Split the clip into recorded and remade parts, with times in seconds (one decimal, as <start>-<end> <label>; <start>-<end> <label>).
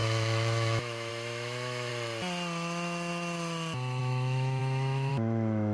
0.0-1.9 remade; 1.9-4.0 recorded; 4.0-5.7 remade